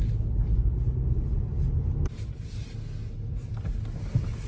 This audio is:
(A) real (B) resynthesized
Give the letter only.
A